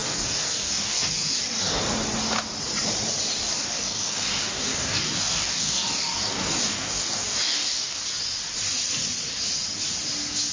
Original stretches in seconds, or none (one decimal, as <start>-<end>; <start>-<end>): 1.8-3.4; 8.0-10.5